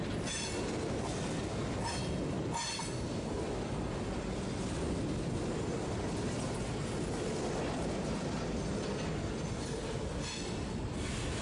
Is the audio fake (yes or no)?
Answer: no